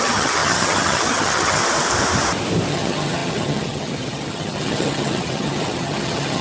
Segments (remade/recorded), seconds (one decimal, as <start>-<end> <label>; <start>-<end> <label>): 0.0-1.6 remade; 1.6-2.7 recorded; 2.7-6.4 remade